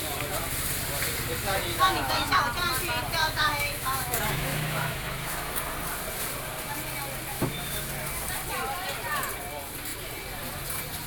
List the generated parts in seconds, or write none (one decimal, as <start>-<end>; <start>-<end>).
1.7-2.4; 3.2-5.6; 7.3-7.9